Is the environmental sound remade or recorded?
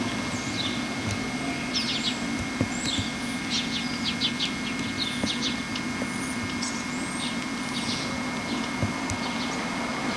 recorded